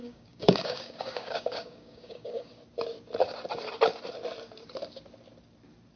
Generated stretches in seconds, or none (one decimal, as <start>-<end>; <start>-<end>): 0.0-2.5